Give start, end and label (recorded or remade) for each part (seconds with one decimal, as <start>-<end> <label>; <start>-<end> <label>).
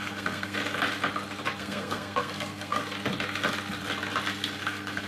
0.0-0.6 remade; 0.6-1.6 recorded; 1.6-2.8 remade; 2.8-4.6 recorded; 4.6-5.1 remade